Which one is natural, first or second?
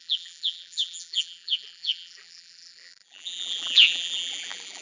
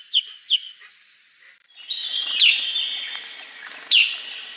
second